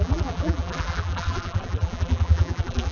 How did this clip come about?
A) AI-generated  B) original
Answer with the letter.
A